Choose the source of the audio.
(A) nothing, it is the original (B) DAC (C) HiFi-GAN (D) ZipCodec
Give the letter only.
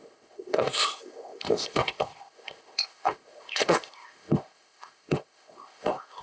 D